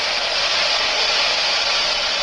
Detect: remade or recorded recorded